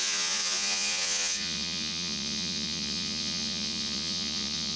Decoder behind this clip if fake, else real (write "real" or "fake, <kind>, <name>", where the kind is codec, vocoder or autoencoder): fake, vocoder, Vocos